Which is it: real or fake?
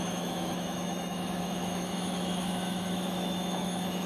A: fake